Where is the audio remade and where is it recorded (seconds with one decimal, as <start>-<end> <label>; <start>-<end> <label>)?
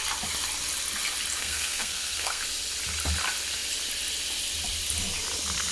0.0-1.4 recorded; 1.4-2.4 remade; 2.4-5.7 recorded